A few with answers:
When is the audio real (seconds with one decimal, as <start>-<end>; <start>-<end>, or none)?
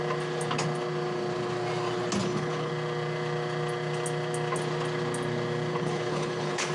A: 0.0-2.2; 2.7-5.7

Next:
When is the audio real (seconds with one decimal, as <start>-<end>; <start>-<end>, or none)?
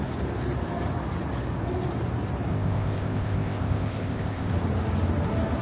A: 0.0-2.5; 4.5-5.6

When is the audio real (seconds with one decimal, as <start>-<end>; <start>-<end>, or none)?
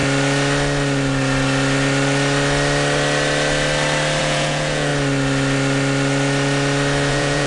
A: 0.0-4.2; 4.9-7.1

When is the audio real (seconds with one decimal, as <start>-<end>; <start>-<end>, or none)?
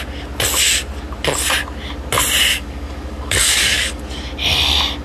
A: 0.0-2.5; 4.0-5.0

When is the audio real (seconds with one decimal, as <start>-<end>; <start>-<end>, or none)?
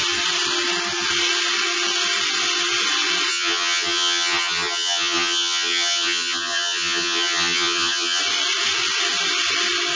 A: 0.0-3.3; 8.2-10.0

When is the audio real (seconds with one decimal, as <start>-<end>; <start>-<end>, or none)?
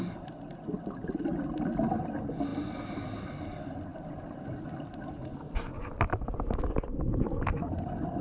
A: 0.0-8.2